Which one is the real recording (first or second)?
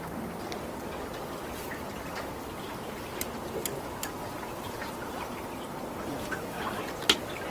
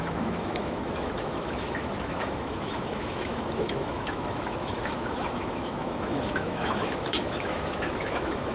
first